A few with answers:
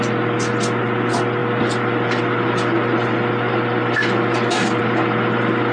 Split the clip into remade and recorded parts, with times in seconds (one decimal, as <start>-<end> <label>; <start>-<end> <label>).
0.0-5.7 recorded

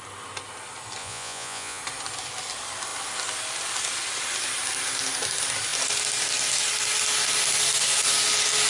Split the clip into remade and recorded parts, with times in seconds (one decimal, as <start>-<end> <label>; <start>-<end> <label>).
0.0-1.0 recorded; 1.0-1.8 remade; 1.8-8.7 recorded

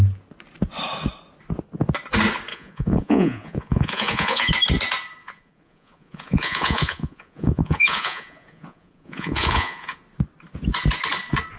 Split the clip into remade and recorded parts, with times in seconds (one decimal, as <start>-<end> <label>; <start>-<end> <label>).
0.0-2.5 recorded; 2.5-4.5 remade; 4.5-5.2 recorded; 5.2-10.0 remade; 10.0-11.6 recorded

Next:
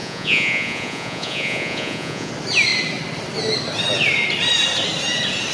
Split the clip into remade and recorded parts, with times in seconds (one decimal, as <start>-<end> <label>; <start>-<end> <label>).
0.0-2.3 remade; 2.3-5.5 recorded